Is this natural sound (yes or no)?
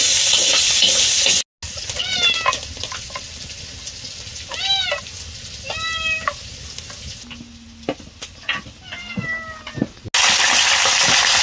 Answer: yes